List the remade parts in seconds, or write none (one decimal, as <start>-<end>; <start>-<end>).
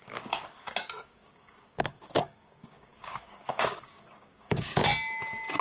0.0-4.7